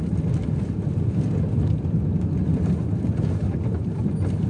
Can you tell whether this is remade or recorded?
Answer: recorded